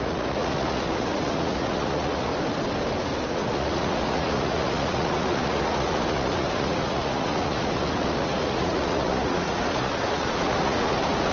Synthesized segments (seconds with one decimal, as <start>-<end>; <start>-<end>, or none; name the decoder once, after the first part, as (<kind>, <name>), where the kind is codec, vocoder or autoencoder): 0.0-2.3 (vocoder, Vocos); 3.2-11.3